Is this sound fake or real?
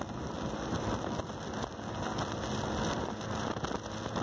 real